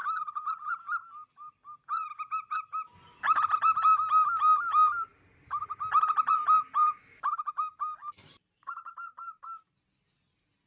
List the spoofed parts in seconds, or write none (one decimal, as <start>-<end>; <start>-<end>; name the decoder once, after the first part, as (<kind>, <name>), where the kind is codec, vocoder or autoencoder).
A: 8.0-9.7 (vocoder, BigVGAN v2)